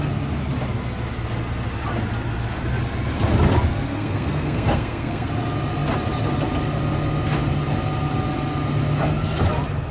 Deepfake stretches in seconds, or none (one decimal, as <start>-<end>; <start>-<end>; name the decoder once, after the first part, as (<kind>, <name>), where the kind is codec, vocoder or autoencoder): 3.7-5.3 (codec, SNAC)